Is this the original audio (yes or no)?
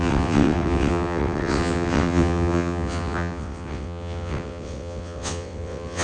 no